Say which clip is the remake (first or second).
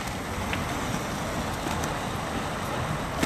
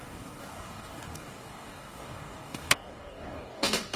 second